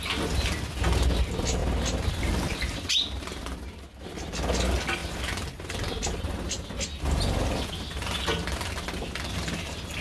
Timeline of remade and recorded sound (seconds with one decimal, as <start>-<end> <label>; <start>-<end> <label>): 0.0-10.0 recorded